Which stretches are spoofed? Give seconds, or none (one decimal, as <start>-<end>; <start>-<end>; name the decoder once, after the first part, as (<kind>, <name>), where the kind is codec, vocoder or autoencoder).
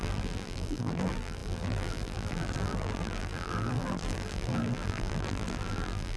0.0-6.2 (vocoder, BigVGAN v2)